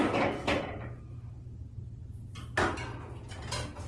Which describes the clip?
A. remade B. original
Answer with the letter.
B